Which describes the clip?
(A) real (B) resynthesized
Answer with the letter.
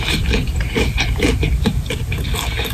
B